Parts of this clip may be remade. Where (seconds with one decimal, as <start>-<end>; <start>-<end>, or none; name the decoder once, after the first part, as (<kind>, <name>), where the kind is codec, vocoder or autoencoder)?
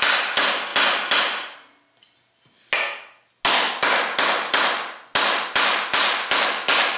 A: none